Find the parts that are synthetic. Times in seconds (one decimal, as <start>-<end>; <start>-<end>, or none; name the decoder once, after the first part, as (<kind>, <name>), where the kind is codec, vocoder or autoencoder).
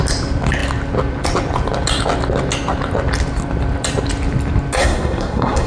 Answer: 4.8-5.7 (codec, SNAC)